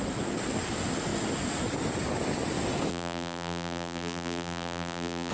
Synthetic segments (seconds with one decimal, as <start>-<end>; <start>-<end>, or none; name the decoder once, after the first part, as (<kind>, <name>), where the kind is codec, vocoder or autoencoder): 2.9-5.3 (vocoder, BigVGAN v2)